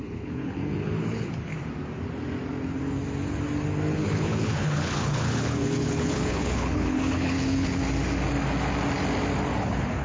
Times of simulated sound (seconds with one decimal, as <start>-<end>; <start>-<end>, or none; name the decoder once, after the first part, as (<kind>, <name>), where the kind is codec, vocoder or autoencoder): 0.0-1.5 (codec, HILCodec); 3.9-7.8; 9.6-10.0